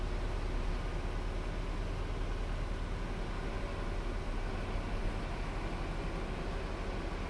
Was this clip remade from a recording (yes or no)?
no